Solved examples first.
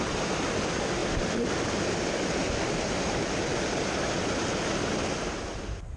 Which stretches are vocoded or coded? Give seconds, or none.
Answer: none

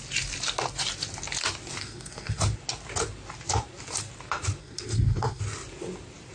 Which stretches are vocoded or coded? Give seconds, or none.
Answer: 1.8-2.4 (codec, SNAC); 4.6-5.4

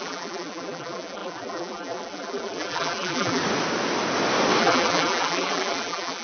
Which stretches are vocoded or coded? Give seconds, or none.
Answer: 0.0-3.4 (vocoder, BigVGAN v2); 4.6-6.2

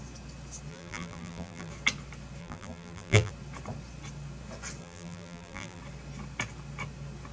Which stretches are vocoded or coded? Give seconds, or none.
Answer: 0.7-1.7 (vocoder, BigVGAN v2); 2.4-3.3; 4.8-5.8